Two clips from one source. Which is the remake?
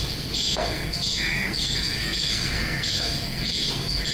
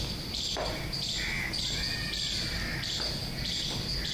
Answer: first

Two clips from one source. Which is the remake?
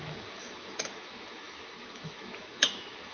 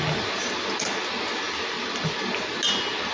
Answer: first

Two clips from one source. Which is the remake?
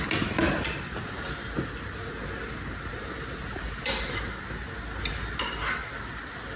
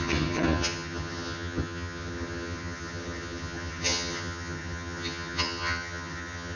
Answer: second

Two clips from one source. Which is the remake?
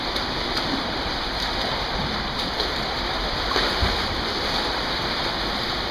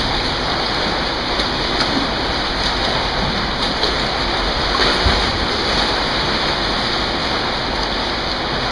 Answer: first